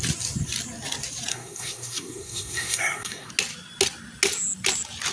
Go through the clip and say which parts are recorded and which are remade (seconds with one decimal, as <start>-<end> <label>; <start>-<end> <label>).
0.0-1.3 recorded; 1.3-3.3 remade; 3.3-5.1 recorded